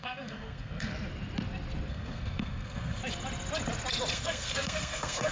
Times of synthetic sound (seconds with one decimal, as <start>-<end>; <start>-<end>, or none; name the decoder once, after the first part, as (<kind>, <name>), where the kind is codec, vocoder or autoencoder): 0.0-0.9 (codec, SNAC); 1.9-3.0; 4.1-5.3

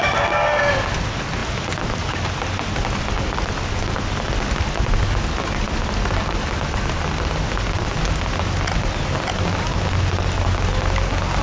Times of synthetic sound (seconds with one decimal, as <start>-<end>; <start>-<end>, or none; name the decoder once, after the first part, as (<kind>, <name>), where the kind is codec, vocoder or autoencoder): none

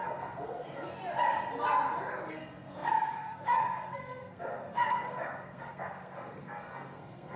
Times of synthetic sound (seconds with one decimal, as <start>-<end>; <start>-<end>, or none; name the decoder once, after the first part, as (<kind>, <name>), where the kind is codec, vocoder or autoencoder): 0.0-1.0 (codec, SNAC); 2.3-7.4

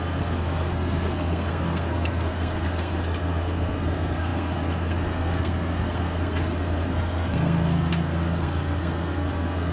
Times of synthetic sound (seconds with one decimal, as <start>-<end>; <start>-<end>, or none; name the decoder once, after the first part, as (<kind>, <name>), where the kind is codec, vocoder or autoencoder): 0.0-9.7 (codec, SNAC)

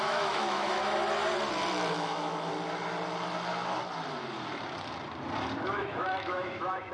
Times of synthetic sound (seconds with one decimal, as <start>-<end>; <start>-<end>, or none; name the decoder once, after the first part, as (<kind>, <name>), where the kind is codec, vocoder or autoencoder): 0.0-0.8 (autoencoder, DAC-VAE); 1.9-2.5; 5.7-6.9

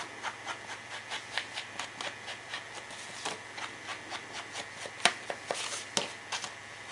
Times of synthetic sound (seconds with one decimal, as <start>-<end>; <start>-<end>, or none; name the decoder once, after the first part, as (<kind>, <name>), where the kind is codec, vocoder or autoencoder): none

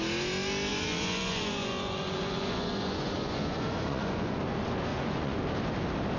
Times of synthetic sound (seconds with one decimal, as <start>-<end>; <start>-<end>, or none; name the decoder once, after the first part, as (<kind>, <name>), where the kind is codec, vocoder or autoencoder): 0.7-4.4 (vocoder, Vocos); 4.9-5.4

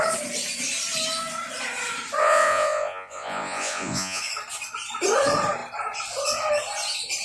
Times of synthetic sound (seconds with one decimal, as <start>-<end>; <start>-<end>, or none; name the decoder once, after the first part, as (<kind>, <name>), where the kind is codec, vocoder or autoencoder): 2.2-4.2 (vocoder, Vocos)